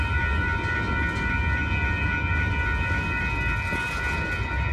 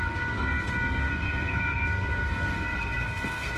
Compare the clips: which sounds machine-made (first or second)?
second